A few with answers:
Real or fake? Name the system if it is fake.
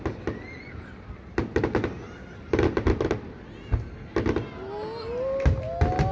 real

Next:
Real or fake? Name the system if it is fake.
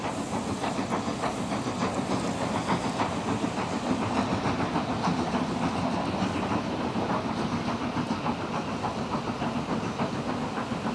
real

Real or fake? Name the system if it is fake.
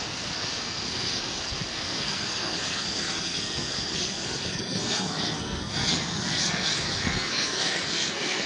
fake, codec, SNAC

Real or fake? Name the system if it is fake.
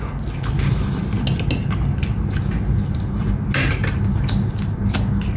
real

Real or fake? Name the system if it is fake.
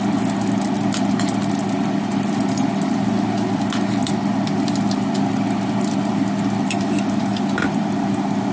real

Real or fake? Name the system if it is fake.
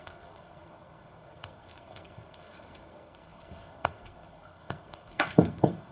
fake, codec, SNAC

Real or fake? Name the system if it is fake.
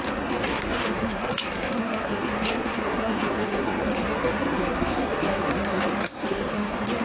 fake, codec, SNAC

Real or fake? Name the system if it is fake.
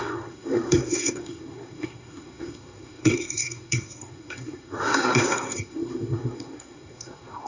fake, codec, SNAC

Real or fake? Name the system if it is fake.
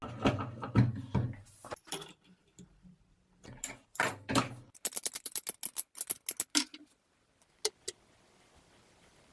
real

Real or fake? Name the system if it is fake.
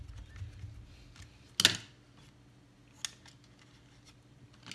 real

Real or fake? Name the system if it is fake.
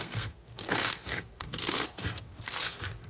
fake, codec, SNAC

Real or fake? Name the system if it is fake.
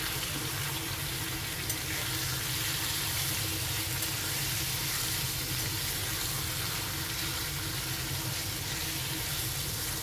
real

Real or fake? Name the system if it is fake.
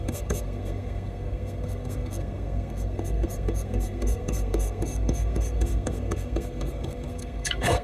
fake, codec, SNAC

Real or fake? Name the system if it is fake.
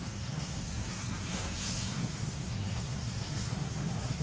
fake, codec, SNAC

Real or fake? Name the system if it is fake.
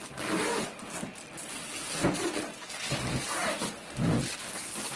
real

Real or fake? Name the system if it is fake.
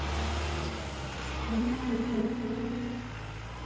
real